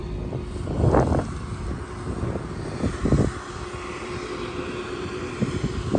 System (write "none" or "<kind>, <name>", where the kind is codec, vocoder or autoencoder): none